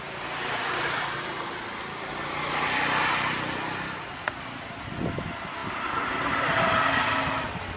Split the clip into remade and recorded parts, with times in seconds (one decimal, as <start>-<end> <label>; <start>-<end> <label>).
0.0-7.8 recorded